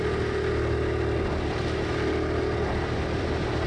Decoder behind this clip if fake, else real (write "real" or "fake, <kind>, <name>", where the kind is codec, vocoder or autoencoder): real